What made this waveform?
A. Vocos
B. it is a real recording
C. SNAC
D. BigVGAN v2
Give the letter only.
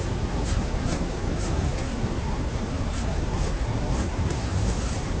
C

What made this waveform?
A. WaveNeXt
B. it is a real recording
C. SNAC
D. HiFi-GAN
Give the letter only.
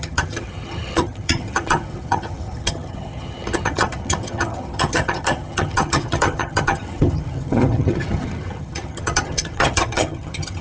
D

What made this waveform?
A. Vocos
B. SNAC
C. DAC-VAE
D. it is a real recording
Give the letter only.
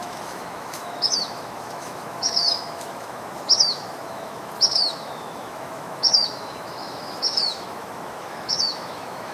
C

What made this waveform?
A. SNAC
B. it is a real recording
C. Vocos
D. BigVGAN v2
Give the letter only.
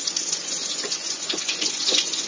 C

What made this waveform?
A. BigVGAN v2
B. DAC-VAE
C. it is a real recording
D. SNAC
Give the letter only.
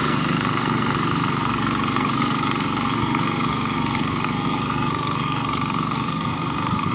D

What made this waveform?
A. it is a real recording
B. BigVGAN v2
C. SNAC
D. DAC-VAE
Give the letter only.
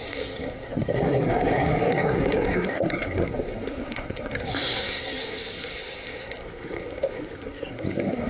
C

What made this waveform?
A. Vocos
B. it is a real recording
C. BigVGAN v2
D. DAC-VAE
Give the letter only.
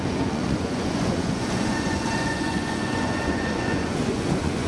A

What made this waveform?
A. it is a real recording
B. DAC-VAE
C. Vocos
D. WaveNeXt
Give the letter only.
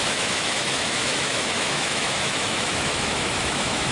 B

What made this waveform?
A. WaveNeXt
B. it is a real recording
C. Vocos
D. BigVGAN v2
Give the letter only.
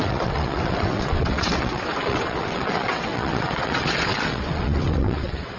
A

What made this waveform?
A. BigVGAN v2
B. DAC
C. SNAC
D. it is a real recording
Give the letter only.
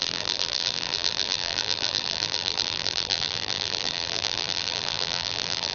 A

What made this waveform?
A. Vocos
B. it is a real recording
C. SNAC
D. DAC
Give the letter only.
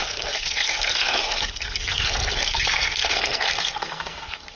C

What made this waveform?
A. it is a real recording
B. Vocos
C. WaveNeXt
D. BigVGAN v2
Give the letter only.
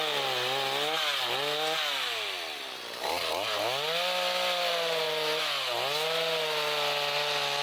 A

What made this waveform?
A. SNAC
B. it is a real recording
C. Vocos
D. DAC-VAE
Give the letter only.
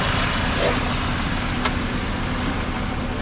B